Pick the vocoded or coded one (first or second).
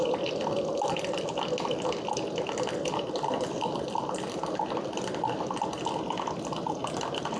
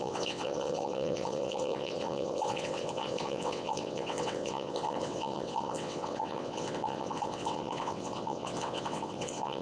second